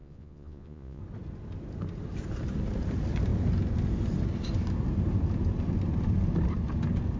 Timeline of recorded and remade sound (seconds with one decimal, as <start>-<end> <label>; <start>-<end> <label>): 0.0-1.0 remade; 1.0-7.2 recorded